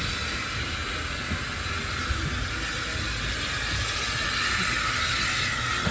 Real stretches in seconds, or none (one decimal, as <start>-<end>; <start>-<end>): 0.0-5.9